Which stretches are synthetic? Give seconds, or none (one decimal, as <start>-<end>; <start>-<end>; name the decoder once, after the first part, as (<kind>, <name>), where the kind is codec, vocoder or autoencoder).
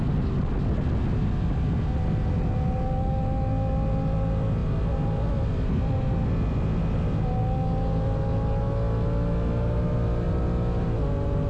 none